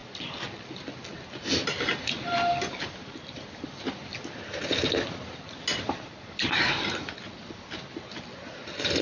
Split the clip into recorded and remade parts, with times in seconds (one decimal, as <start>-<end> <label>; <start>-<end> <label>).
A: 0.0-4.2 remade; 4.2-9.0 recorded